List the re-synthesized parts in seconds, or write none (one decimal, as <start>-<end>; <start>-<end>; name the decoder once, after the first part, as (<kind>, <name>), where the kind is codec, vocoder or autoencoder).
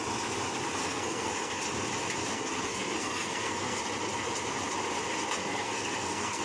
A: 0.8-1.6 (codec, SNAC); 2.3-3.8; 5.4-6.4